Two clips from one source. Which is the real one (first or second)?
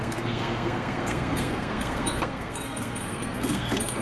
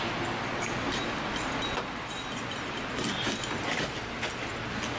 second